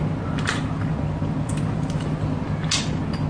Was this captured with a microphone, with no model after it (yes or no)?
yes